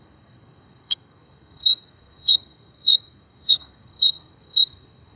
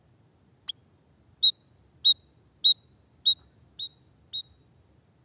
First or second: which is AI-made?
first